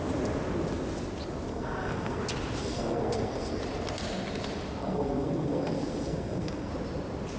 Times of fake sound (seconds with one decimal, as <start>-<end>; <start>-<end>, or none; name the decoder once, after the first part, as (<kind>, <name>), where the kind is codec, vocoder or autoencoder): 1.5-2.2 (codec, SNAC); 2.6-3.6; 4.8-6.7